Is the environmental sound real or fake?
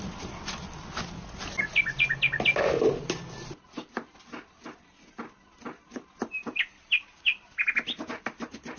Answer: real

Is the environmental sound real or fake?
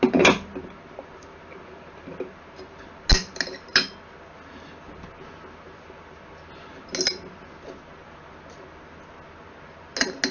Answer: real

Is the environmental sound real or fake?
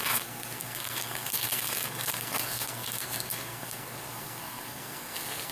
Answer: fake